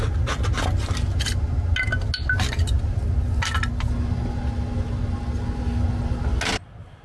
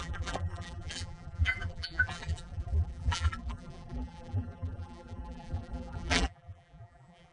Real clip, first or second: first